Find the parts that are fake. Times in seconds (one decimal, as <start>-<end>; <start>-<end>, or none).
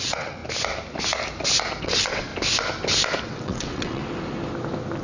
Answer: 0.0-0.4; 1.8-2.3; 3.2-4.0